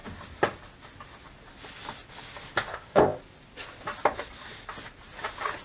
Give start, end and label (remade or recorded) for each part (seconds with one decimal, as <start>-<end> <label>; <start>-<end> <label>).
0.0-2.7 recorded; 2.7-3.2 remade; 3.2-5.6 recorded

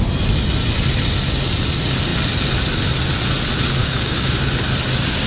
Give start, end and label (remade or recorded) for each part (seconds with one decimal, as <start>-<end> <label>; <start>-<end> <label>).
0.0-3.8 recorded; 3.8-4.4 remade; 4.4-5.3 recorded

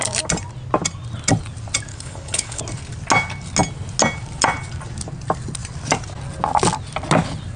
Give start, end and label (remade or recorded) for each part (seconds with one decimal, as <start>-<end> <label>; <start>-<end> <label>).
0.0-1.9 recorded; 1.9-2.6 remade; 2.6-7.6 recorded

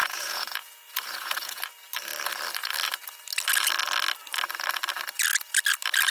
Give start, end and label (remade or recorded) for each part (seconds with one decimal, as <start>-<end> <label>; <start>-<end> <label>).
0.0-1.6 remade; 1.6-6.1 recorded

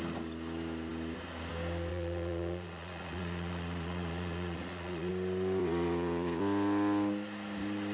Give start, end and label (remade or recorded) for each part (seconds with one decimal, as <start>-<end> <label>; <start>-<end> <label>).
0.0-1.9 recorded; 1.9-5.1 remade; 5.1-5.6 recorded; 5.6-6.4 remade; 6.4-7.9 recorded

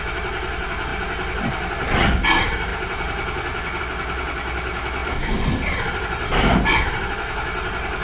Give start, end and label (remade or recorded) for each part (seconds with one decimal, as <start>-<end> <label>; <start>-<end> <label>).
0.0-2.7 recorded; 2.7-3.8 remade; 3.8-5.0 recorded; 5.0-6.8 remade; 6.8-8.0 recorded

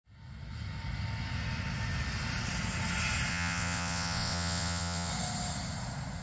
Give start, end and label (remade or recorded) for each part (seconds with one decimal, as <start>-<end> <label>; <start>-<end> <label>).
0.0-3.3 recorded; 3.3-5.1 remade; 5.1-6.2 recorded